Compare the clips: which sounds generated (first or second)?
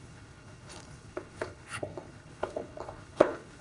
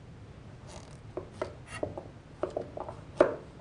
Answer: first